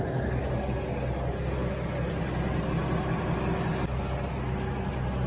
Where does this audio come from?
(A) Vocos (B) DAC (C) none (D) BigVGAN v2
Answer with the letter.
C